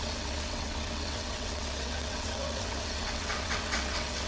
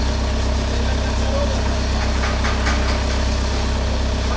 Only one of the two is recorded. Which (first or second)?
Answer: second